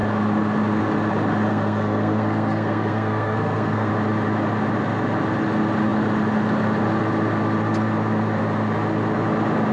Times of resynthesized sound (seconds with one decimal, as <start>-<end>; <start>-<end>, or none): 1.5-3.9